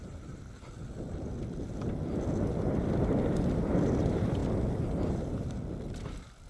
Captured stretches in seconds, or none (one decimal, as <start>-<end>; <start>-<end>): 4.4-5.1